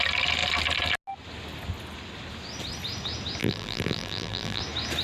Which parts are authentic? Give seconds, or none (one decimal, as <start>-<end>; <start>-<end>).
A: 0.0-3.4; 4.6-5.0